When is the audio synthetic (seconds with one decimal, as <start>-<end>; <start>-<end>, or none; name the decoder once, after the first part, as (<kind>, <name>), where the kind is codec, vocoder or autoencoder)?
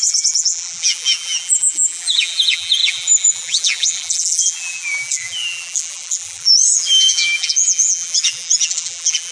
0.0-9.3 (vocoder, BigVGAN v2)